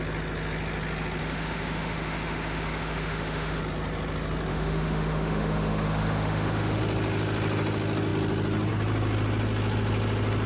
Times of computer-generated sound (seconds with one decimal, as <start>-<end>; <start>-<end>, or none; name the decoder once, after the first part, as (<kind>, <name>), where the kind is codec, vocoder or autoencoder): 1.2-3.6 (autoencoder, DAC-VAE); 4.5-6.8